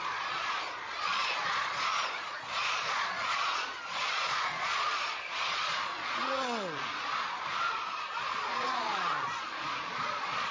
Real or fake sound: fake